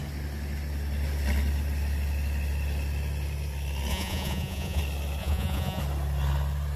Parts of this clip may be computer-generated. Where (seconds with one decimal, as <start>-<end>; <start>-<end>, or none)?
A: 3.9-4.8; 5.2-5.8